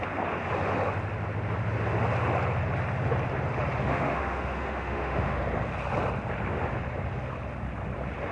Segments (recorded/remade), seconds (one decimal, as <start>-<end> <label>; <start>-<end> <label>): 0.0-3.8 recorded; 3.8-5.4 remade; 5.4-8.3 recorded